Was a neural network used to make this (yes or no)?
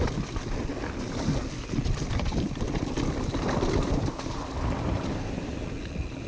no